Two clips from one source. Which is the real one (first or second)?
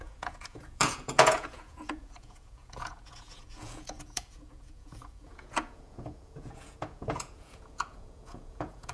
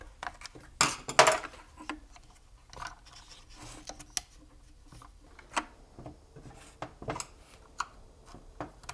second